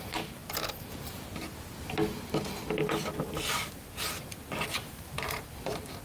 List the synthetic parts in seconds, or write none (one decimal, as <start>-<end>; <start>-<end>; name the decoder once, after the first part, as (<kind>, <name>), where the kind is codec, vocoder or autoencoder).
0.0-0.4 (vocoder, BigVGAN v2); 3.2-6.0